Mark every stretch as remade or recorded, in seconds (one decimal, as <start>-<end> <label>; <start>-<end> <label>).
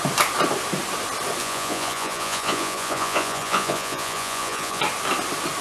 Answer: 0.0-1.4 recorded; 1.4-4.8 remade; 4.8-5.6 recorded